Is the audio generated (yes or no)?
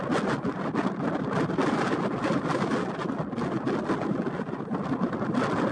no